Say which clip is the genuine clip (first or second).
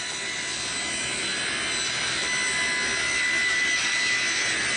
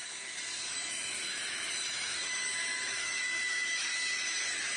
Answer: first